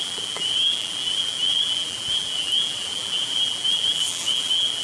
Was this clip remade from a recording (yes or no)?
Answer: yes